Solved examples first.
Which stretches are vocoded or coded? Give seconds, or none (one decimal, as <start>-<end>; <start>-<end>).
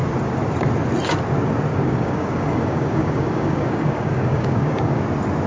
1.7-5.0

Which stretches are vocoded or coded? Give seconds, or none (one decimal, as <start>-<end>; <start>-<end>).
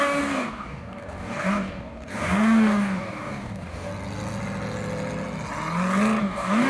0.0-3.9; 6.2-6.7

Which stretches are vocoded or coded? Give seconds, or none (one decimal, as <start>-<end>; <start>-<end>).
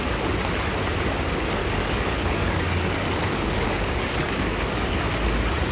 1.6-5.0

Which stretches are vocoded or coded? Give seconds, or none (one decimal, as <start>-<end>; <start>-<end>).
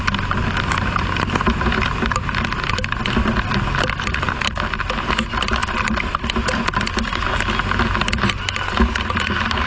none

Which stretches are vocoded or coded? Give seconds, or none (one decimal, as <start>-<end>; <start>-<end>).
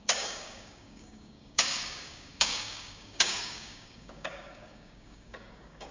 0.0-5.9